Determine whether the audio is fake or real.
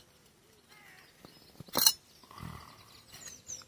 real